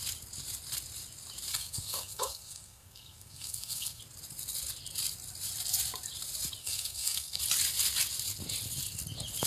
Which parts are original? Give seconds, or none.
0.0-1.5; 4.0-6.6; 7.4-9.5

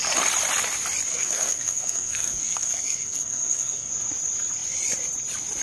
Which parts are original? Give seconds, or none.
0.0-1.1; 3.9-5.6

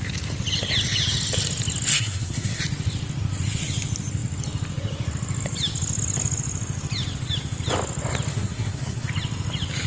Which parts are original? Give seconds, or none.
0.0-1.9; 2.6-8.3; 9.1-9.9

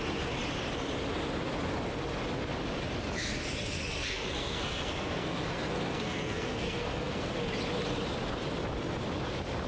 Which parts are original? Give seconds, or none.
0.0-3.9; 7.4-9.7

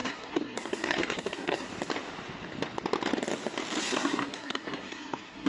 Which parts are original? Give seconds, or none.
1.7-3.8

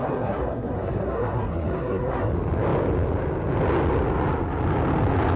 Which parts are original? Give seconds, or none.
2.3-5.4

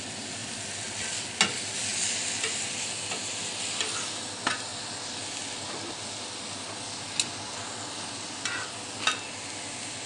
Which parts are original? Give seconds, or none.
0.0-10.1